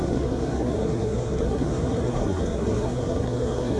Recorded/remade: remade